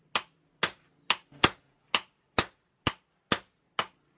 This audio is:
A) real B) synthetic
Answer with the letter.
A